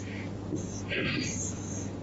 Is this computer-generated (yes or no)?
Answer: no